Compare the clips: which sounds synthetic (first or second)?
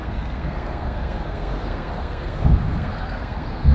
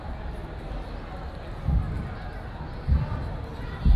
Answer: first